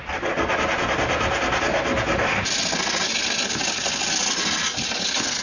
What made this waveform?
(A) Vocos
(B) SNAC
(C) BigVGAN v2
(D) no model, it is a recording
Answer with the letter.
D